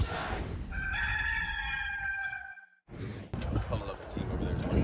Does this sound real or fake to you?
real